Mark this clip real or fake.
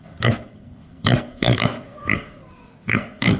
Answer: fake